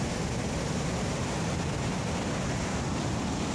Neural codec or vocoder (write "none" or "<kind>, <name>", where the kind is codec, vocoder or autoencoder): none